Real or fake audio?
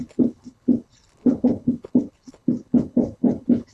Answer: fake